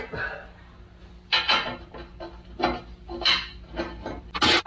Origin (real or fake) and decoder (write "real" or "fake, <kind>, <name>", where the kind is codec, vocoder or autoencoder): real